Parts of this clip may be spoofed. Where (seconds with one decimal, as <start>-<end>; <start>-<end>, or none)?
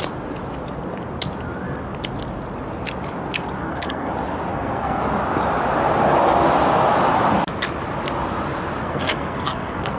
3.6-4.1; 4.5-5.0; 8.8-10.0